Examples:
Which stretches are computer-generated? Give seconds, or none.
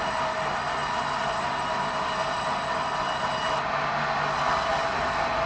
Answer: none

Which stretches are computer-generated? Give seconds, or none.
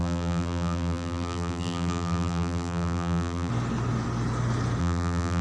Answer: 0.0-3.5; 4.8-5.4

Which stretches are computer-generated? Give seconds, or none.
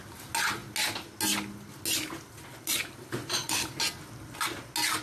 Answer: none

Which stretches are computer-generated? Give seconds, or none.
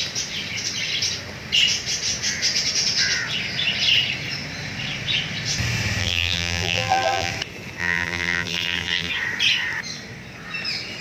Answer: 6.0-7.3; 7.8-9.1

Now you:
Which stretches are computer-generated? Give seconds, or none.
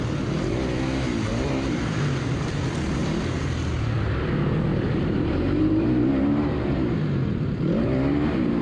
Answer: 1.3-2.5; 4.7-6.7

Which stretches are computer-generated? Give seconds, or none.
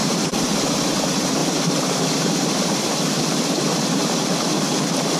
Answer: 0.0-4.0